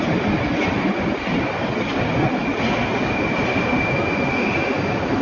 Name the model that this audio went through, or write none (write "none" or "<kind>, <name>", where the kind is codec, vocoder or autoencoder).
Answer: none